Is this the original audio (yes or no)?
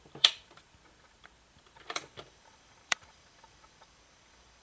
no